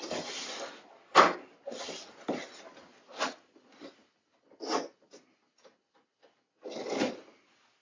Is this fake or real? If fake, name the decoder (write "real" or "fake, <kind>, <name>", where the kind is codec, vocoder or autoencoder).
real